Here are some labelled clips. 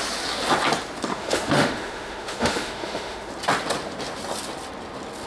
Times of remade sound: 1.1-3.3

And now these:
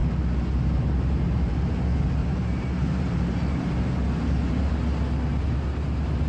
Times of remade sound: 2.2-4.7

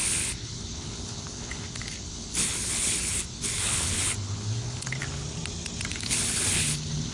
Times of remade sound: 0.0-5.0; 5.9-7.1

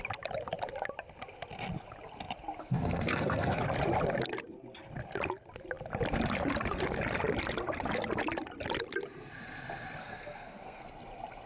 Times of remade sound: 2.6-3.6; 10.0-10.9

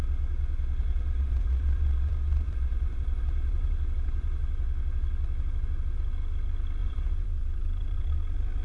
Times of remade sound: 0.8-4.4; 6.8-8.0

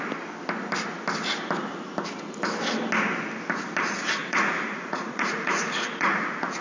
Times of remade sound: 4.2-6.6